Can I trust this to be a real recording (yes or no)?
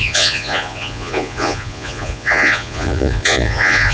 no